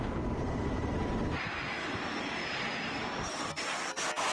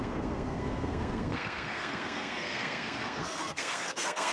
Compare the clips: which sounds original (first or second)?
first